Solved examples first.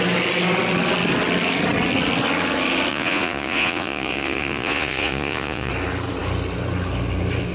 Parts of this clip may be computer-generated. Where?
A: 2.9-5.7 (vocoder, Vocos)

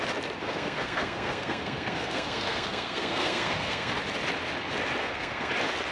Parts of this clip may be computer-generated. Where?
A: 0.4-3.9 (codec, SNAC); 5.0-5.5

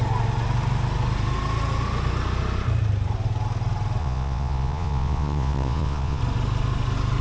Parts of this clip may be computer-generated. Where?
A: 4.0-6.2 (vocoder, Vocos)

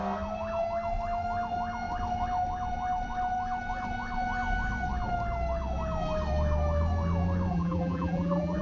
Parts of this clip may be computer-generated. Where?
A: 7.5-8.6 (vocoder, BigVGAN v2)

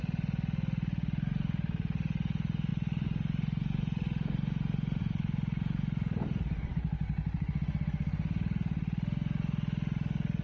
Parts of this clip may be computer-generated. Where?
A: none

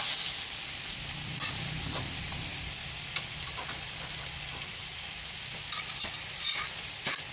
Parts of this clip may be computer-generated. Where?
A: none

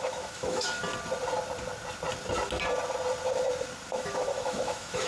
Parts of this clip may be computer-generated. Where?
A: 0.0-0.8 (autoencoder, DAC-VAE); 3.9-5.1